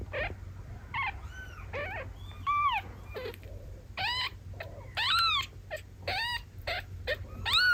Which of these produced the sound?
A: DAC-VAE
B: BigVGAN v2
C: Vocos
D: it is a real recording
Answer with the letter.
D